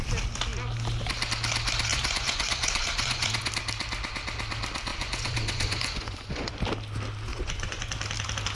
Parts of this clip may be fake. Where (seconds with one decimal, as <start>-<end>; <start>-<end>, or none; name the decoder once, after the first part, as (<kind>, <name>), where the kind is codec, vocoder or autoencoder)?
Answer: 1.9-3.5 (vocoder, Vocos); 4.9-6.6; 7.3-7.9